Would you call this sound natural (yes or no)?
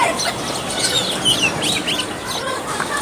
yes